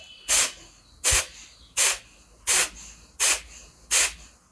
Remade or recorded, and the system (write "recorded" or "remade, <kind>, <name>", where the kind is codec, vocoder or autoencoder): recorded